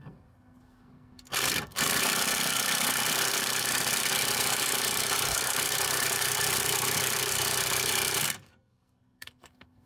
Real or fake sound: fake